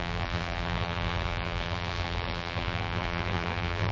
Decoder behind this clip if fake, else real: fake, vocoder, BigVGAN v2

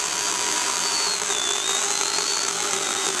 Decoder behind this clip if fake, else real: fake, vocoder, BigVGAN v2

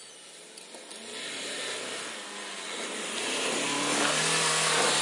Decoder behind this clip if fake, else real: real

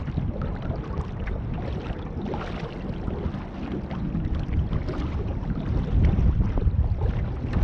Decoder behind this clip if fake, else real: real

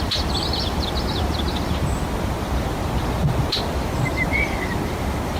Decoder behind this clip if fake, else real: real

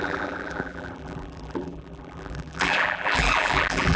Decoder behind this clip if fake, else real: fake, vocoder, BigVGAN v2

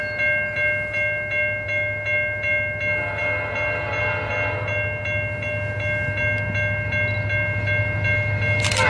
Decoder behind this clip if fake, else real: real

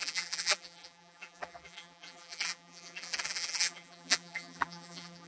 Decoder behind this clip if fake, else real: fake, vocoder, BigVGAN v2